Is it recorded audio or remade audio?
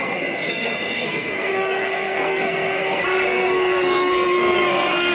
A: remade